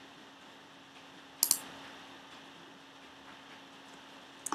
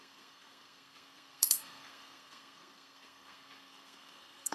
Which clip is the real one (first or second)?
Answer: first